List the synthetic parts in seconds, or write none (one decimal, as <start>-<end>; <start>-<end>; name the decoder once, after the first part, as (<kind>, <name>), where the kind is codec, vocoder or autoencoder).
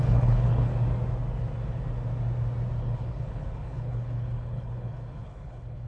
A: 0.0-0.7 (codec, HILCodec); 2.8-5.9